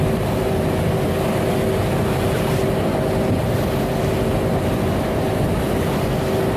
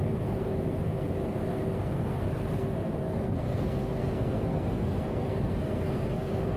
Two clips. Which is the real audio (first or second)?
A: first